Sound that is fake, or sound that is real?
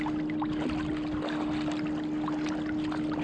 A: real